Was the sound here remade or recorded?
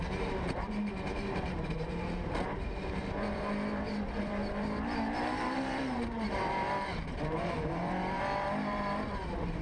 remade